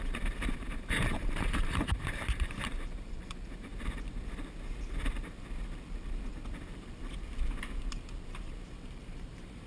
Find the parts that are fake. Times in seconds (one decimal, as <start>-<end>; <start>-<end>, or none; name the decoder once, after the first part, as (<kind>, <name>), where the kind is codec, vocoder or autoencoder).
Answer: 0.0-3.7 (vocoder, BigVGAN v2); 8.8-9.7